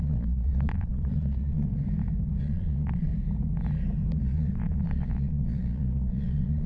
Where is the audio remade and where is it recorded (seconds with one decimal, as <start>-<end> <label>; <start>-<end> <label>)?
0.0-1.7 remade; 1.7-2.4 recorded; 2.4-3.1 remade; 3.1-4.2 recorded; 4.2-6.7 remade

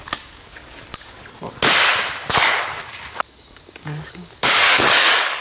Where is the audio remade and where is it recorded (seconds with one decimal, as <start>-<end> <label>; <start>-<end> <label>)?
0.0-0.9 remade; 0.9-2.6 recorded; 2.6-5.4 remade

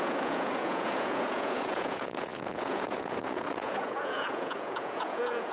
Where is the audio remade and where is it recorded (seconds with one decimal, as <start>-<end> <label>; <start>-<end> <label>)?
0.0-5.5 remade